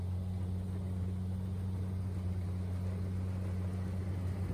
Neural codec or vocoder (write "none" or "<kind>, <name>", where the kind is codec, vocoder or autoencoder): none